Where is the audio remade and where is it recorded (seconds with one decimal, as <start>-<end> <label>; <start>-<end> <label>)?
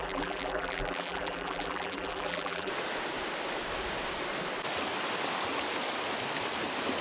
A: 0.0-2.7 remade; 2.7-7.0 recorded